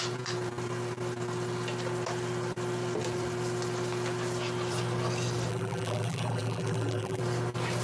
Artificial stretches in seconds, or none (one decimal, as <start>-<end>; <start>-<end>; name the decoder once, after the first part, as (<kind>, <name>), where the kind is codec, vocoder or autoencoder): 5.5-7.2 (vocoder, BigVGAN v2)